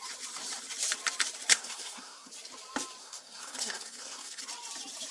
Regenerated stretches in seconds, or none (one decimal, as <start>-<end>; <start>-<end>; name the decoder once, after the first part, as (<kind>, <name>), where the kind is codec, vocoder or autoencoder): 1.5-2.3 (codec, SNAC); 3.0-4.4